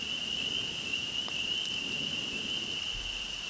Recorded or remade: remade